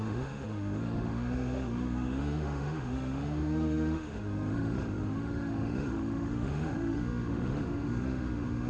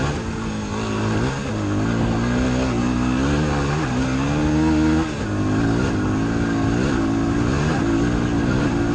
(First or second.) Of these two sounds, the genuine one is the second